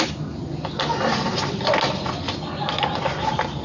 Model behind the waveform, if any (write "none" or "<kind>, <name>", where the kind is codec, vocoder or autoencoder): none